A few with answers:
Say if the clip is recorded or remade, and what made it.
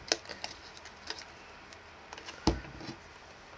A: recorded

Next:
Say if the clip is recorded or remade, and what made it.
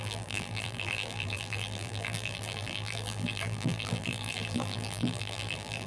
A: remade, vocoder, BigVGAN v2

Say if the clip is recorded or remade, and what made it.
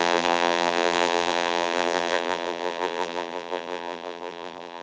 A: remade, vocoder, BigVGAN v2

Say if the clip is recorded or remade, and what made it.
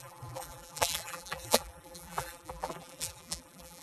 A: remade, vocoder, BigVGAN v2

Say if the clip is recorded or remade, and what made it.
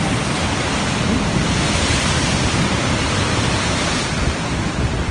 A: remade, vocoder, BigVGAN v2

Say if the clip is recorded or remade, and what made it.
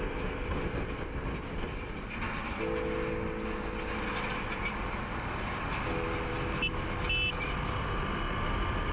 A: recorded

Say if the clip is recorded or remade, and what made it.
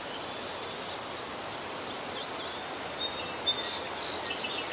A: recorded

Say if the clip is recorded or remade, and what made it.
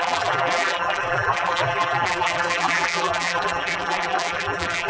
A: remade, vocoder, BigVGAN v2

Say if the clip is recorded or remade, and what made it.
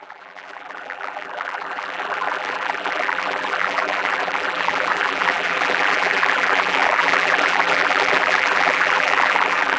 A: remade, vocoder, BigVGAN v2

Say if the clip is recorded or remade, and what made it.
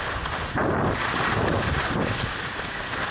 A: recorded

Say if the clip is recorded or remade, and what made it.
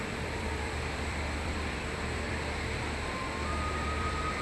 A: remade, vocoder, BigVGAN v2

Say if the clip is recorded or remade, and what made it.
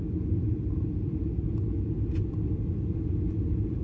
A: remade, vocoder, BigVGAN v2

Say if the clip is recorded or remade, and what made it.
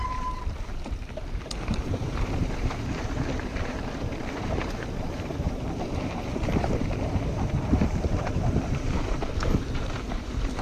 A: remade, vocoder, BigVGAN v2